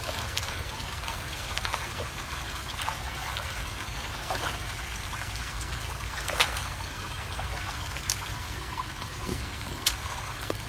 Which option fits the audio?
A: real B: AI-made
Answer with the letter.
B